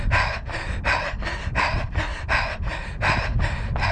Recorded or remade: recorded